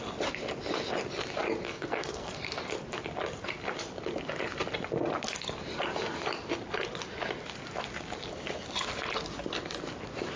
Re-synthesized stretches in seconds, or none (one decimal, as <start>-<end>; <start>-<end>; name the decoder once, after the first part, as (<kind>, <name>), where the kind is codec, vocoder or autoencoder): 1.7-2.6 (codec, SNAC)